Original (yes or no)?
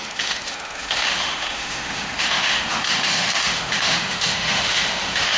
no